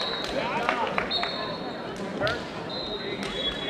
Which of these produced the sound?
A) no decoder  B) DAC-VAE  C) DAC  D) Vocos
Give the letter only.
A